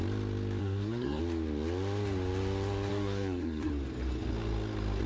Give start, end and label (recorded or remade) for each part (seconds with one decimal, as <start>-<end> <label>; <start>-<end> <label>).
0.0-0.6 recorded; 0.6-1.2 remade; 1.2-2.9 recorded; 2.9-3.7 remade; 3.7-5.1 recorded